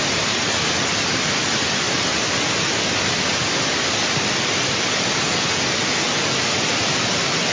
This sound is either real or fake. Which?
real